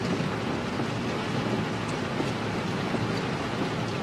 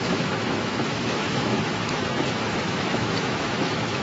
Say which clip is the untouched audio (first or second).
first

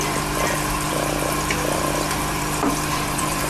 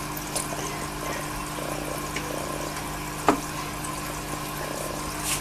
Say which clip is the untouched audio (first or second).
second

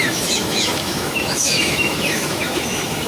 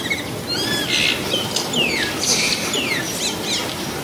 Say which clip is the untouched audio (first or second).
second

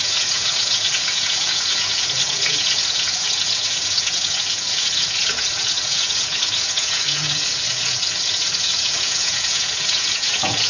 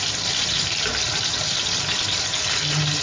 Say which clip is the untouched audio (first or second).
second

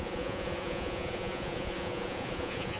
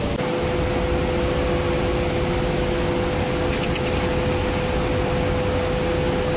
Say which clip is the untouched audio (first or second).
second